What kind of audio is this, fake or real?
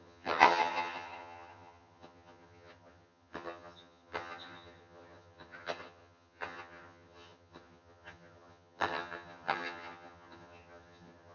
fake